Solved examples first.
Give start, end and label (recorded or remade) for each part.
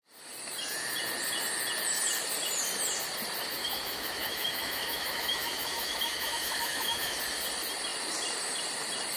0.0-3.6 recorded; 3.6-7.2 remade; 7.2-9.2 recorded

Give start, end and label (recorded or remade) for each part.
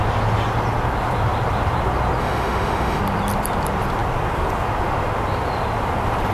0.0-2.2 recorded; 2.2-3.0 remade; 3.0-6.3 recorded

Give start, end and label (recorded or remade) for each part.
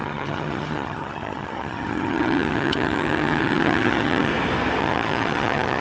0.0-4.3 remade; 4.3-4.8 recorded; 4.8-5.8 remade